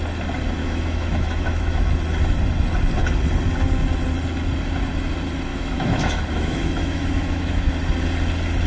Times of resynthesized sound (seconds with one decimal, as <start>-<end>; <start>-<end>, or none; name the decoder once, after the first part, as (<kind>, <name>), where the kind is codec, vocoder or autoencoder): 0.6-1.8 (autoencoder, DAC-VAE); 5.5-7.7

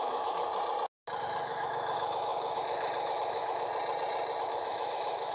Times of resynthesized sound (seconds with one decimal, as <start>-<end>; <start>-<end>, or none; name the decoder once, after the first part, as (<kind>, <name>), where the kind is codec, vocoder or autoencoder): 0.0-0.5 (autoencoder, DAC-VAE); 1.2-3.7; 4.4-5.3

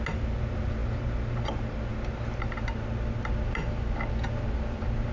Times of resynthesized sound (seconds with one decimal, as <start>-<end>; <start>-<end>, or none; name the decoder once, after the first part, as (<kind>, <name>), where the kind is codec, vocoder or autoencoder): none